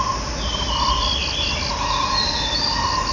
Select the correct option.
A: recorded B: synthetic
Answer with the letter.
A